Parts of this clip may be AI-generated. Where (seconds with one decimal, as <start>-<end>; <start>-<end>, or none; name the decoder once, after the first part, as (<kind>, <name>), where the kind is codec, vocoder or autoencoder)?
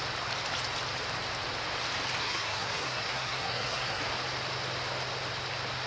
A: 2.2-4.0 (codec, SNAC)